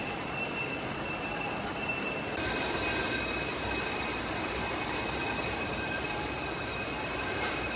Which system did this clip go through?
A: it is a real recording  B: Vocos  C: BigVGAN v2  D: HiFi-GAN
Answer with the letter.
C